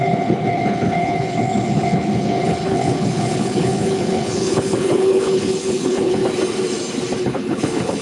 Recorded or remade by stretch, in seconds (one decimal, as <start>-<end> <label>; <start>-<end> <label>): 0.0-6.2 remade; 6.2-7.2 recorded; 7.2-8.0 remade